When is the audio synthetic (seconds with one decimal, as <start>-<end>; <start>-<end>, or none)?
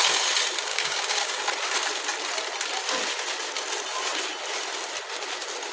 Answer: 0.7-1.4